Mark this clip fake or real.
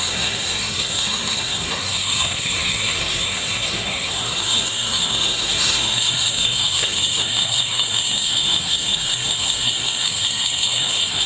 fake